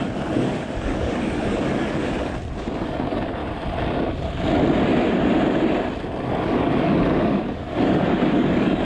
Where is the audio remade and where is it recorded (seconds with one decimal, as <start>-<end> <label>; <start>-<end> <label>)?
0.0-2.0 remade; 2.0-2.6 recorded; 2.6-3.4 remade; 3.4-6.3 recorded; 6.3-8.8 remade